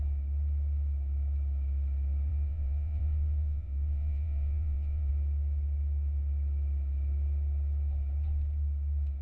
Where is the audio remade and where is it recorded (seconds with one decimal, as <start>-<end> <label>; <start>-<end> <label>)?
0.0-2.3 recorded; 2.3-5.1 remade; 5.1-9.2 recorded